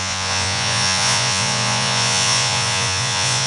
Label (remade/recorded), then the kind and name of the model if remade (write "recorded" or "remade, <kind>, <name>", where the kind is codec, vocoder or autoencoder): remade, vocoder, Vocos